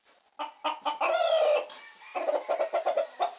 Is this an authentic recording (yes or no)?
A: yes